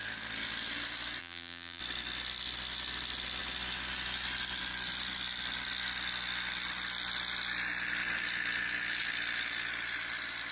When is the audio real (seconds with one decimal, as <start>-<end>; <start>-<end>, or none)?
0.0-1.2; 1.8-10.5